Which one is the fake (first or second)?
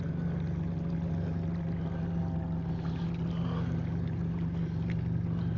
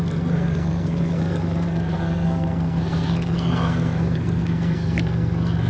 second